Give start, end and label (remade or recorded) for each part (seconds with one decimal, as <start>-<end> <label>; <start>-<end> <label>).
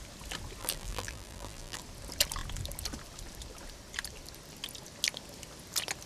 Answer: 0.0-0.6 recorded; 0.6-1.8 remade; 1.8-6.1 recorded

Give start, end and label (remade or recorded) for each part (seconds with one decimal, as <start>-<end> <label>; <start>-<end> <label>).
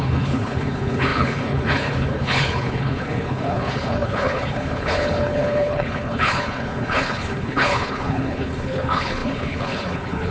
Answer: 0.0-10.3 remade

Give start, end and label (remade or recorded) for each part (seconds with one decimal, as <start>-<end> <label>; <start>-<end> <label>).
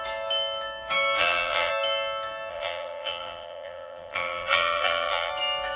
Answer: 0.0-1.2 recorded; 1.2-1.7 remade; 1.7-2.5 recorded; 2.5-5.3 remade; 5.3-5.8 recorded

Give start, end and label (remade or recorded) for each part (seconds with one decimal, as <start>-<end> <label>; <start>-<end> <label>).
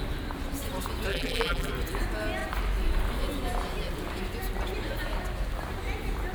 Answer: 0.0-1.1 recorded; 1.1-1.7 remade; 1.7-6.3 recorded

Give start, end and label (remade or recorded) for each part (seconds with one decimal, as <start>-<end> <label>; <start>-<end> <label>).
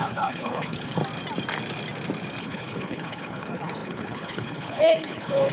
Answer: 0.0-1.0 remade; 1.0-2.4 recorded; 2.4-5.5 remade